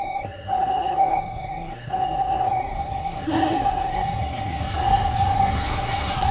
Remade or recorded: remade